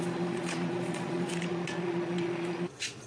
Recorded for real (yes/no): no